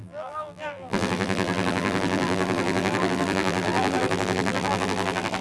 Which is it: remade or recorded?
remade